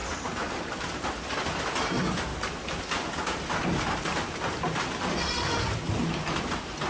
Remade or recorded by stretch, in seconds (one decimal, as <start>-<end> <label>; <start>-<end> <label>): 0.0-0.7 recorded; 0.7-2.3 remade; 2.3-4.8 recorded; 4.8-6.9 remade